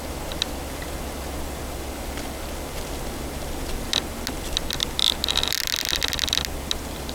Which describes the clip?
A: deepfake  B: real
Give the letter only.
B